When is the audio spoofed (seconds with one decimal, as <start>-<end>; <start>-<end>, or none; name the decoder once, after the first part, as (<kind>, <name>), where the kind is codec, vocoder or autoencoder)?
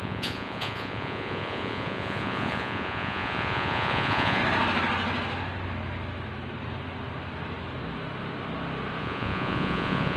0.0-4.4 (vocoder, Vocos); 9.0-10.2